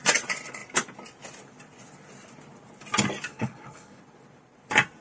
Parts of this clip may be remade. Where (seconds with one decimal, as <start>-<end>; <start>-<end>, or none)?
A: 3.3-4.0